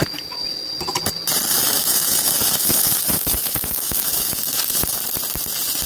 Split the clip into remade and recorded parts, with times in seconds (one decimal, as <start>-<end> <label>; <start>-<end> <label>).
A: 0.0-1.5 recorded; 1.5-5.0 remade; 5.0-5.9 recorded